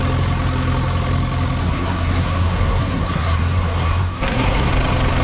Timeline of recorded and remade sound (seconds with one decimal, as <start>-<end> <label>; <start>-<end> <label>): 0.0-1.6 recorded; 1.6-4.7 remade; 4.7-5.2 recorded